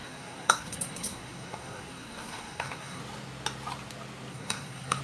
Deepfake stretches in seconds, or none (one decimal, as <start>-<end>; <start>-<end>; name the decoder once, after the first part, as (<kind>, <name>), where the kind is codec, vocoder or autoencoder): 0.0-3.0 (codec, SNAC); 4.3-5.0